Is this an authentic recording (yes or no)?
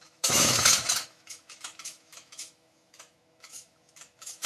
no